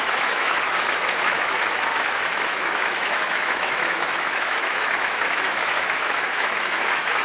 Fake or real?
fake